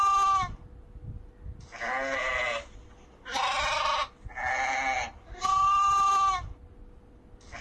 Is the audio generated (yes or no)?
no